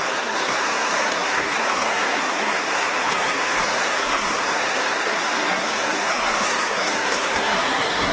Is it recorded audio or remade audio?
remade